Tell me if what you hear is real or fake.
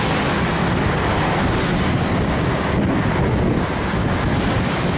real